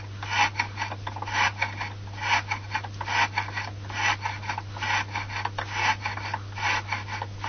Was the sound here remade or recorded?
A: recorded